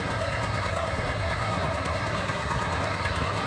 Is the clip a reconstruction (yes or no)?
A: yes